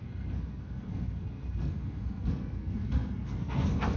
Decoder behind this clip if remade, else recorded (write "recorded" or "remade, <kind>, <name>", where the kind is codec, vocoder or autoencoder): remade, codec, SNAC